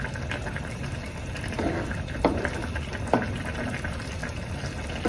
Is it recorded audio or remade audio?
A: recorded